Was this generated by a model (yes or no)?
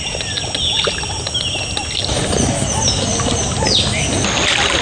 no